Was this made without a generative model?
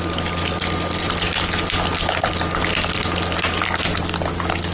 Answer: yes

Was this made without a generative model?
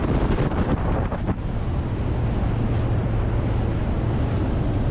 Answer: yes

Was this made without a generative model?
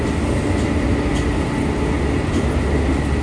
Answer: yes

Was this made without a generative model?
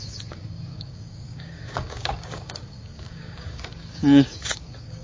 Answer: no